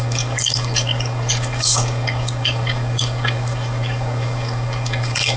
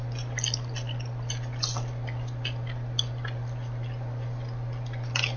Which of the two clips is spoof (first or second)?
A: first